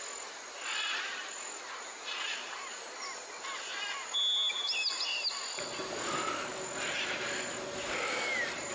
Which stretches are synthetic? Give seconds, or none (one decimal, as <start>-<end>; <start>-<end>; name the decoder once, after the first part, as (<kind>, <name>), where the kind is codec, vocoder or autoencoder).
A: none